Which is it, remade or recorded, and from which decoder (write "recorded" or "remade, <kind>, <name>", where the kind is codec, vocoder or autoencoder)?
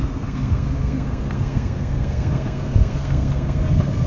remade, codec, SNAC